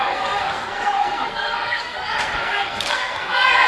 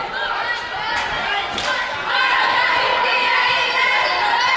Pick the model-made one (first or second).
first